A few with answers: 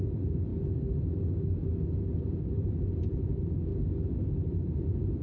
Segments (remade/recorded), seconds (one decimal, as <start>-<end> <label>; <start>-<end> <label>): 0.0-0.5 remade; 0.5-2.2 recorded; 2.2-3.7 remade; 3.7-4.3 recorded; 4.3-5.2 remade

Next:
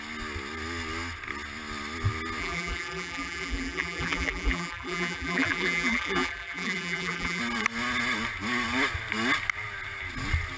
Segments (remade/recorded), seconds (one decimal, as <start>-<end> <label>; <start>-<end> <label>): 0.0-2.4 recorded; 2.4-7.4 remade; 7.4-10.6 recorded

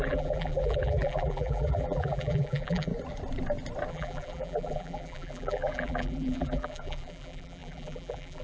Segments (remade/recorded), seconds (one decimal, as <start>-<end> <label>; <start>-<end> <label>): 0.0-2.9 remade; 2.9-3.9 recorded; 3.9-8.4 remade

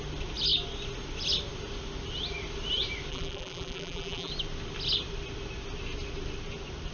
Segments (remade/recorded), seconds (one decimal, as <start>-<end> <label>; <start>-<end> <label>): 0.0-3.1 recorded; 3.1-4.3 remade; 4.3-6.9 recorded